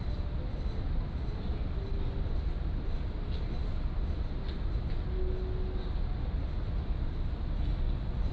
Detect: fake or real real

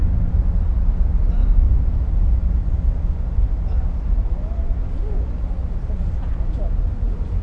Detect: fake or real real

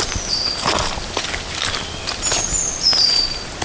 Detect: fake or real real